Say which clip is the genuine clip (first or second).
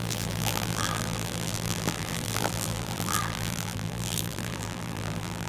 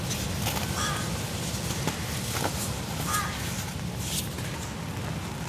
second